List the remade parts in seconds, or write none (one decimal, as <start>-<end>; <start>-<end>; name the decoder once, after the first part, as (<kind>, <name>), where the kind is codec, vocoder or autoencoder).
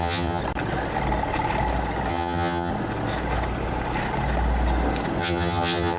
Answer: 0.0-0.4 (vocoder, HiFi-GAN); 2.1-2.7; 5.2-6.0